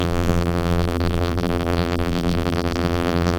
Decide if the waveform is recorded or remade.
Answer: remade